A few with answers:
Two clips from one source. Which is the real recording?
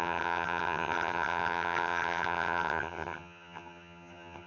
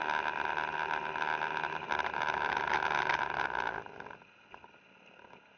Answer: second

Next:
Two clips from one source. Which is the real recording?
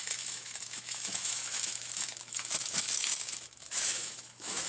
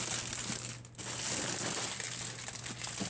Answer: second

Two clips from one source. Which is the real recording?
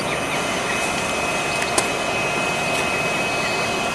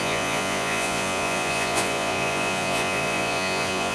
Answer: first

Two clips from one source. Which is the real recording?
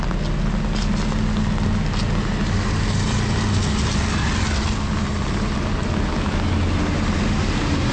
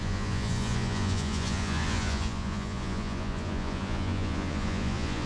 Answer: first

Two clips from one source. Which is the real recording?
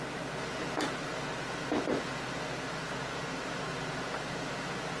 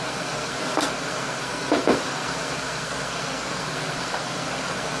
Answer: first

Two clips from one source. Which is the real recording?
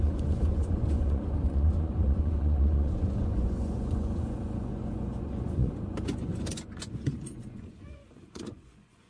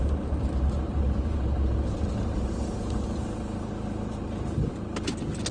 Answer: second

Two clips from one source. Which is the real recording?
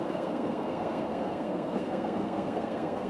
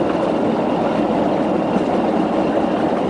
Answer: second